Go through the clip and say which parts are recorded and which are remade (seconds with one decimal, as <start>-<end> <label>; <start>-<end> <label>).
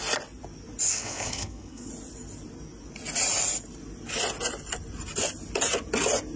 0.0-0.9 recorded; 0.9-1.9 remade; 1.9-6.4 recorded